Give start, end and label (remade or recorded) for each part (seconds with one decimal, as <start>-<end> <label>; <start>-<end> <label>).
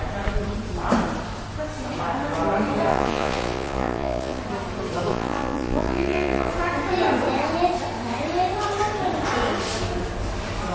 0.0-2.9 recorded; 2.9-4.4 remade; 4.4-5.1 recorded; 5.1-6.5 remade; 6.5-10.7 recorded